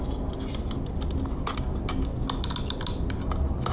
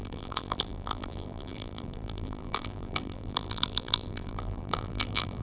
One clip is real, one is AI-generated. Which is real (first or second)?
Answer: first